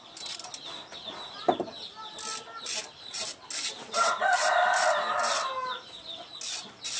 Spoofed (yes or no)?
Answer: no